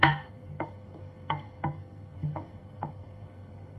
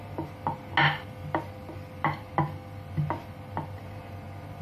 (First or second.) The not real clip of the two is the first